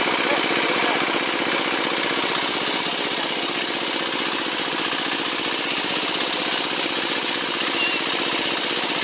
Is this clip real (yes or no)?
yes